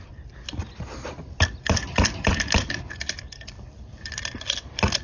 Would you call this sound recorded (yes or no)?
yes